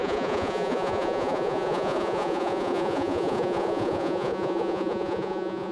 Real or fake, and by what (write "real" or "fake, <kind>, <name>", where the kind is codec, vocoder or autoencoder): fake, vocoder, Vocos